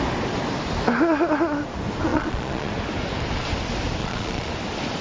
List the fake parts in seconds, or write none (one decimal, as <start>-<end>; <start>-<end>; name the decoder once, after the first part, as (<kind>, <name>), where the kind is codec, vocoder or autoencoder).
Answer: 2.1-2.7 (vocoder, Vocos); 4.0-4.5